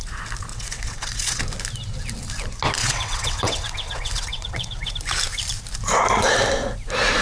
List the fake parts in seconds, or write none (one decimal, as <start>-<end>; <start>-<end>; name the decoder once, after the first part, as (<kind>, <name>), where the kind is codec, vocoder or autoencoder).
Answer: 0.5-1.4 (vocoder, WaveNeXt); 2.8-4.9